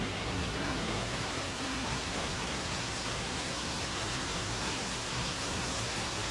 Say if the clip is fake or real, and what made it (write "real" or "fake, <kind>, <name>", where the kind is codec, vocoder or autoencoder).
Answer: fake, codec, SNAC